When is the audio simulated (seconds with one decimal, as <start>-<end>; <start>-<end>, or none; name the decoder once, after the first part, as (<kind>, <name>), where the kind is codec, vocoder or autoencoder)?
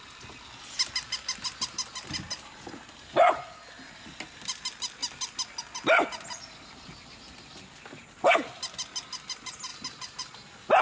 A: none